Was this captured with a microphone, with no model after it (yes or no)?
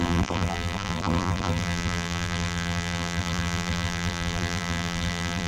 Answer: no